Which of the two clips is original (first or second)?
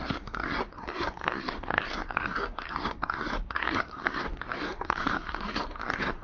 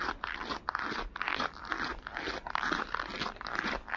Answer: second